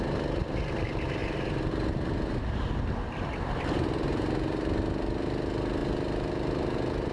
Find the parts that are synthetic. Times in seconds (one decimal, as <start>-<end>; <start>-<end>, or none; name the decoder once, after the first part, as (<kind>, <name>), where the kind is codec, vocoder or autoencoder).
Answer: none